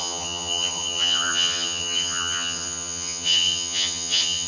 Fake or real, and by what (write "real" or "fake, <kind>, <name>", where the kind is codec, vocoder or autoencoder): fake, vocoder, HiFi-GAN